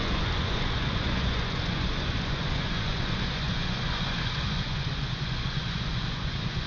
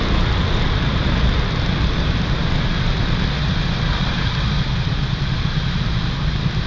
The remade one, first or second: first